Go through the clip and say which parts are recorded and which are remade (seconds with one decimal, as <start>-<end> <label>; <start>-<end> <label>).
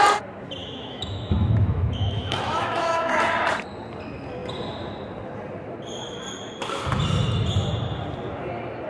0.0-0.6 recorded; 0.6-3.1 remade; 3.1-8.9 recorded